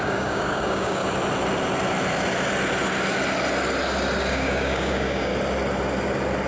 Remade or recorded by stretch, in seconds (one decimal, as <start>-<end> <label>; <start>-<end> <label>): 0.0-1.0 remade; 1.0-4.3 recorded; 4.3-5.3 remade; 5.3-6.5 recorded